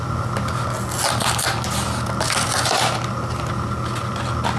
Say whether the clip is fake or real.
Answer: real